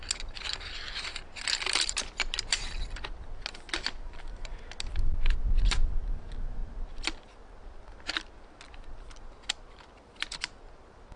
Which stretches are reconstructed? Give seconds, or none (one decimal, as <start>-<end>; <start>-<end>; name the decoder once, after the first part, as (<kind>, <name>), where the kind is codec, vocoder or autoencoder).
none